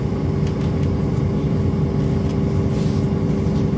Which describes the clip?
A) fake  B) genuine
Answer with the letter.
B